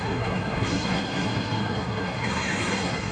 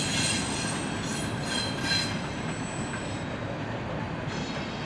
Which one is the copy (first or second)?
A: first